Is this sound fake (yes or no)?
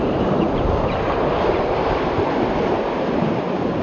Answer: yes